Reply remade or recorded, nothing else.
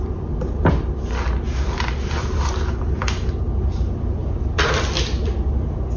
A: recorded